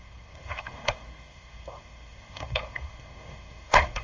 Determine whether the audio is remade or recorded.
remade